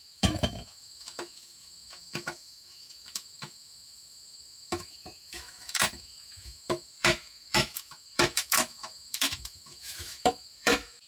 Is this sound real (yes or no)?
no